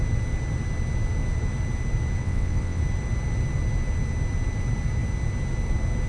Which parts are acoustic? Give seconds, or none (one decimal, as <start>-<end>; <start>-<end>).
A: 0.0-2.2; 2.8-6.1